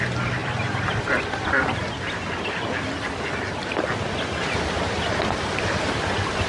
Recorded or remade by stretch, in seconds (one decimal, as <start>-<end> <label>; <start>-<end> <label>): 0.0-6.5 recorded